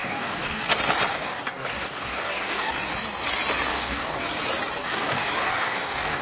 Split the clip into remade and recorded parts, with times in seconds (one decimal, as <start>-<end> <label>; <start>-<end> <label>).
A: 0.0-0.7 remade; 0.7-1.1 recorded; 1.1-2.7 remade; 2.7-3.7 recorded; 3.7-4.2 remade; 4.2-4.9 recorded; 4.9-6.2 remade